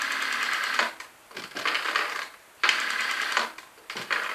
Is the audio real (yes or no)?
yes